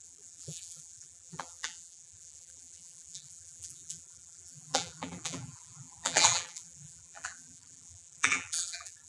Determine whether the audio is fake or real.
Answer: fake